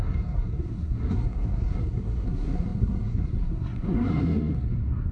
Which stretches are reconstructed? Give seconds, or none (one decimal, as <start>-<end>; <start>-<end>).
0.0-5.1